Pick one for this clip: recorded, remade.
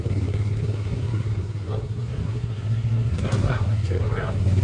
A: remade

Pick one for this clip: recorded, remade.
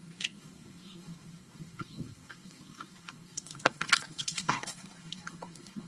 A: remade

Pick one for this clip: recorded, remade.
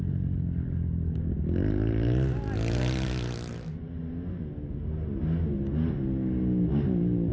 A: recorded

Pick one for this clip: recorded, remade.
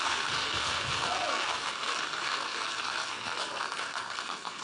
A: remade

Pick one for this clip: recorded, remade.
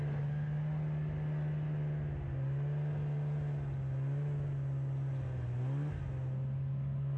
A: recorded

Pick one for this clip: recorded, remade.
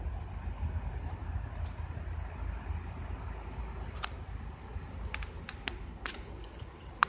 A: recorded